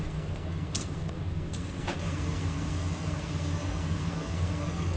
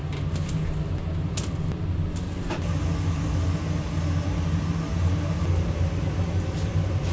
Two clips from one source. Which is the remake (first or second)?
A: first